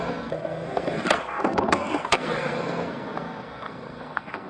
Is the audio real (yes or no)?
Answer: no